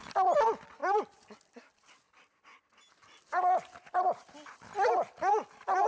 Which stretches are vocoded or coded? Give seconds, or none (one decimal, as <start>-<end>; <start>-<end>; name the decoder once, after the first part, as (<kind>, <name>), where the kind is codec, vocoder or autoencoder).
none